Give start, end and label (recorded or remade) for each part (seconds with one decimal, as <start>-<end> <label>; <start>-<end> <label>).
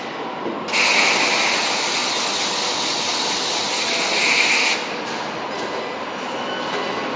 0.0-2.0 recorded; 2.0-2.9 remade; 2.9-7.2 recorded